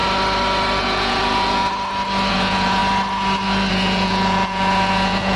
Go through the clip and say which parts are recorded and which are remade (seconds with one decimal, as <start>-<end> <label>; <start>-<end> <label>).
0.0-0.8 recorded; 0.8-1.6 remade; 1.6-2.3 recorded; 2.3-2.8 remade; 2.8-3.7 recorded; 3.7-5.4 remade